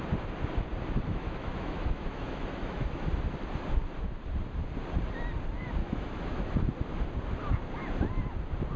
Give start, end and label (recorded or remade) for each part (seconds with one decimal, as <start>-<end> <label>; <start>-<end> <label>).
0.0-1.1 recorded; 1.1-3.1 remade; 3.1-5.8 recorded; 5.8-6.5 remade; 6.5-8.8 recorded